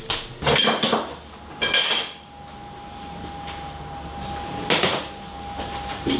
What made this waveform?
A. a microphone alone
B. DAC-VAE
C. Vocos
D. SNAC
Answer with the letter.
A